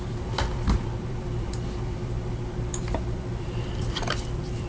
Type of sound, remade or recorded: remade